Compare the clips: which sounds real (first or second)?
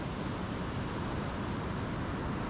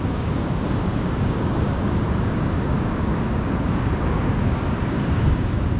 first